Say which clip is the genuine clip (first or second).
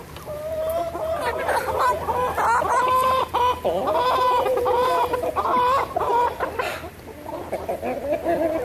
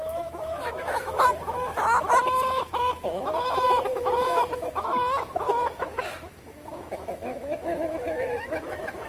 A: first